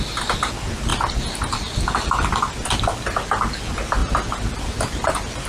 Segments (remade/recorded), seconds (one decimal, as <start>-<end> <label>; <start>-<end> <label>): 0.0-0.9 recorded; 0.9-2.3 remade; 2.3-4.0 recorded; 4.0-5.1 remade; 5.1-5.5 recorded